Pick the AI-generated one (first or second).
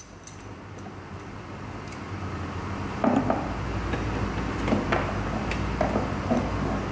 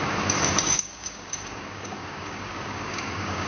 second